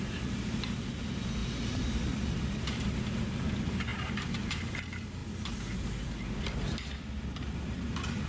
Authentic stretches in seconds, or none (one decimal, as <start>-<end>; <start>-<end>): 0.0-3.9; 4.6-5.2